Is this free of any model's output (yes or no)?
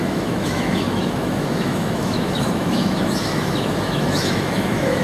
no